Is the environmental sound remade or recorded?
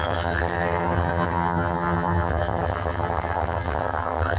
remade